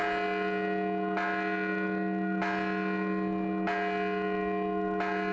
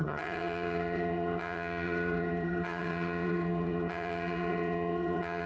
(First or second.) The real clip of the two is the first